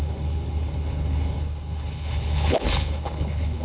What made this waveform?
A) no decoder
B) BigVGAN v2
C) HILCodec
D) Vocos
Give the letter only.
C